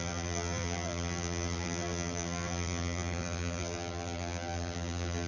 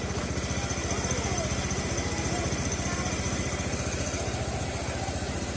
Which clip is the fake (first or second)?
first